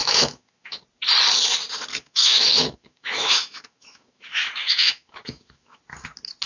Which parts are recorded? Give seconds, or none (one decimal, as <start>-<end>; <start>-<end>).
0.8-1.9; 5.8-6.5